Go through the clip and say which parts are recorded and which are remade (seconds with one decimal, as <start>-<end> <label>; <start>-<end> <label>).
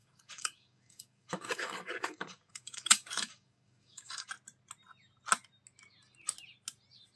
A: 0.0-4.3 remade; 4.3-7.2 recorded